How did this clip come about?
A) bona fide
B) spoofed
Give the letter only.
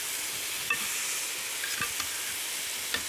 A